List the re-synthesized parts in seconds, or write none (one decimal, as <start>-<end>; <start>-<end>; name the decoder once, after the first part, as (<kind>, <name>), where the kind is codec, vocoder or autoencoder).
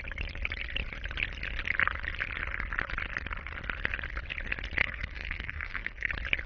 4.8-6.1 (codec, SNAC)